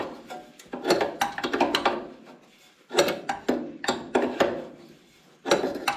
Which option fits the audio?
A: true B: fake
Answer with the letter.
A